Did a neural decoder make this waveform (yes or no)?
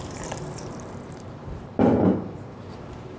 yes